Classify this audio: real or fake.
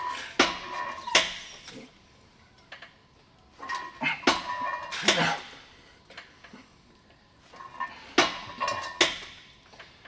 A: real